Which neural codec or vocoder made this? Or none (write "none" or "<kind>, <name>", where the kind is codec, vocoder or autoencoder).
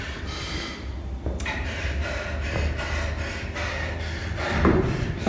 none